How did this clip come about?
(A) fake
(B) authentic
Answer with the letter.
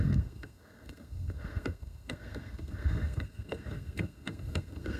A